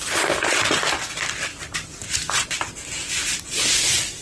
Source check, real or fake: real